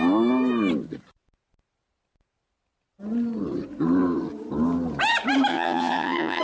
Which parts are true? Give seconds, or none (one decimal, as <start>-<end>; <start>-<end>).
0.0-5.5